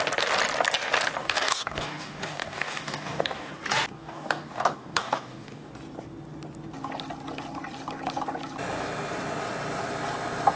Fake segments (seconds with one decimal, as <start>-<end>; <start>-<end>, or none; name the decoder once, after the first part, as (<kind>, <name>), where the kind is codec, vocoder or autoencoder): 1.2-3.5 (codec, DAC); 3.9-5.7